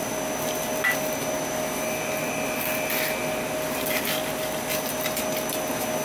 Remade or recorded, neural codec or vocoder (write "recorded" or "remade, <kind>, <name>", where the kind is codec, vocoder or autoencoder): recorded